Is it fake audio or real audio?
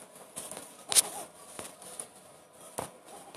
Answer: real